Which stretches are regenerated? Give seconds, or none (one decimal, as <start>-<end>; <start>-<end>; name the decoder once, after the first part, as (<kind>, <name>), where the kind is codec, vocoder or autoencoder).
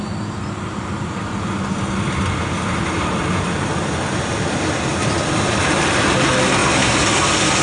none